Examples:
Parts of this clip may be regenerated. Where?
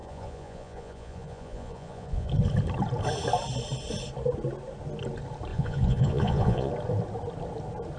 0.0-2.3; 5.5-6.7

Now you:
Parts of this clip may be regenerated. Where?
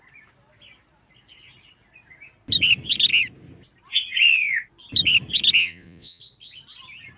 5.6-6.2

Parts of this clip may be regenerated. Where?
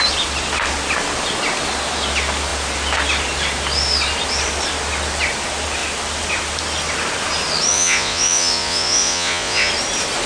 7.7-9.7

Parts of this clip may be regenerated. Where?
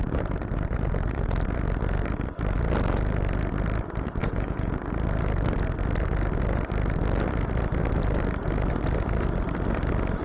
4.2-4.8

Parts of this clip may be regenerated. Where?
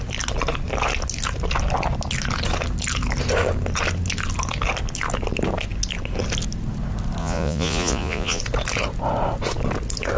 7.2-8.4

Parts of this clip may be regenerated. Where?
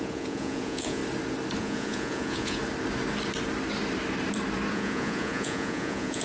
0.0-1.0; 1.6-2.6; 4.7-6.2